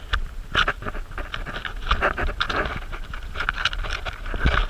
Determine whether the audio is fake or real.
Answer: real